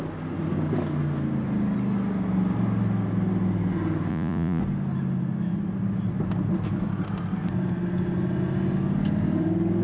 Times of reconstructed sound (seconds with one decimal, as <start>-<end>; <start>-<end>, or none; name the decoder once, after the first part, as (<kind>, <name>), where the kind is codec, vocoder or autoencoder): 4.1-4.6 (vocoder, Vocos)

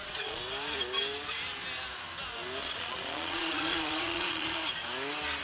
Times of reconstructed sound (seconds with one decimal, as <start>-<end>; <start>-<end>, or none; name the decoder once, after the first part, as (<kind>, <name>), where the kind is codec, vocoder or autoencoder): 0.0-0.4 (vocoder, Vocos); 2.6-4.6

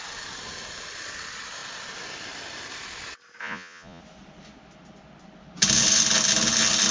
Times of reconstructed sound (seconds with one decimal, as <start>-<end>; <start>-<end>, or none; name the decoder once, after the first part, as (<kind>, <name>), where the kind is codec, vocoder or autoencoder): 3.4-4.0 (vocoder, Vocos)

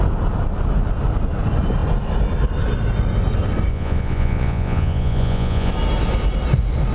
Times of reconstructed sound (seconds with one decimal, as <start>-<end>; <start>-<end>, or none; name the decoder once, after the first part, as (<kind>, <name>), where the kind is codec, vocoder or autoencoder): 3.7-5.7 (vocoder, Vocos)

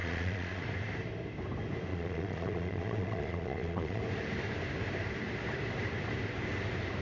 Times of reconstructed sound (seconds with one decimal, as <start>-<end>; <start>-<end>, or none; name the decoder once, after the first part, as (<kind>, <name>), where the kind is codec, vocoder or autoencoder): 0.0-0.6 (vocoder, Vocos); 1.9-4.0